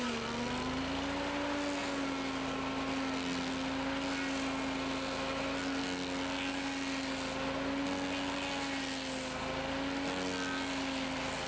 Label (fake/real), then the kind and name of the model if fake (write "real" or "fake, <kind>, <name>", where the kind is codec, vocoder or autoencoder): real